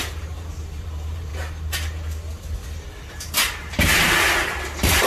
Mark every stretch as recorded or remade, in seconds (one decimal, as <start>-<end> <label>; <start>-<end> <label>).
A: 0.0-1.3 remade; 1.3-3.1 recorded; 3.1-5.1 remade